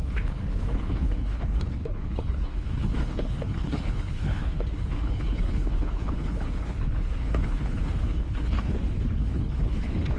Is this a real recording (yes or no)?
no